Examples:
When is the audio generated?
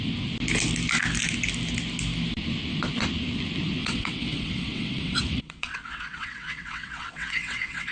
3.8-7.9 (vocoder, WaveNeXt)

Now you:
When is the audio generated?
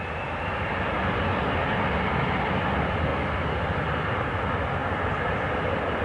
none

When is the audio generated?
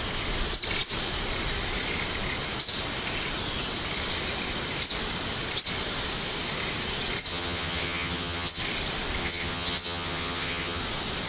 7.3-8.6 (vocoder, HiFi-GAN); 9.2-10.8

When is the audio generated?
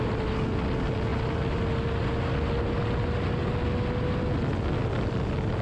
none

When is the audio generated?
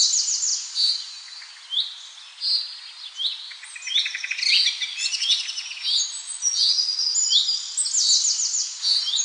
4.9-5.4 (vocoder, Vocos)